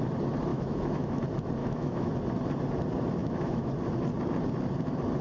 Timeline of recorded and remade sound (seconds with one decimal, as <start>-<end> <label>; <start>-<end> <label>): 0.0-0.5 recorded; 0.5-1.2 remade; 1.2-1.6 recorded; 1.6-2.1 remade; 2.1-3.2 recorded; 3.2-3.7 remade; 3.7-5.2 recorded